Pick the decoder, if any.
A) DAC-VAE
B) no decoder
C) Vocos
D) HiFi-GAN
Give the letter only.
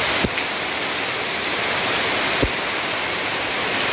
B